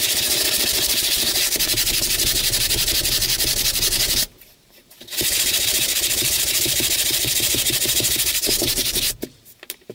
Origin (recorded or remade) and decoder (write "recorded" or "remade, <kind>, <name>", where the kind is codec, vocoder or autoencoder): remade, vocoder, BigVGAN v2